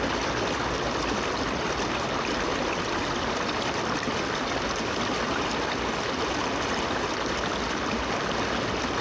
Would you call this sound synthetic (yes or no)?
no